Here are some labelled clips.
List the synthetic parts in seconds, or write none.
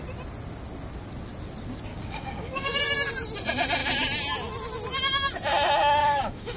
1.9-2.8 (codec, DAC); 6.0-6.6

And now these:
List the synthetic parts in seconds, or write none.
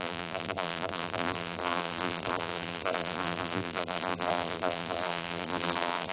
0.0-6.1 (vocoder, BigVGAN v2)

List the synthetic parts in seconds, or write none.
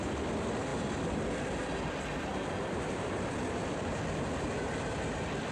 none